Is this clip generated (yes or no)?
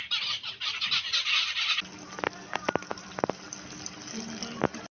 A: no